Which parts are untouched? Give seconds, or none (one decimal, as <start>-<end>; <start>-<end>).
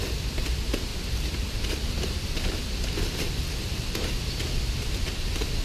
none